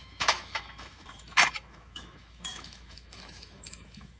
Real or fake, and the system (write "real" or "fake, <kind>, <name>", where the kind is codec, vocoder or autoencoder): fake, autoencoder, DAC-VAE